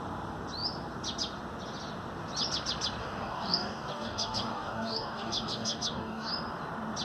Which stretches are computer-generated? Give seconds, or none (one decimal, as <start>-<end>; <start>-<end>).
3.0-6.3